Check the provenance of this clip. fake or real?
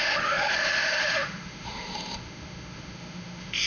fake